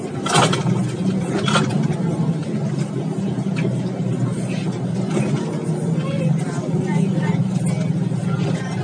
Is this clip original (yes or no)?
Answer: yes